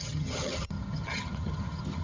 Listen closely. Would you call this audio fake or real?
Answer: fake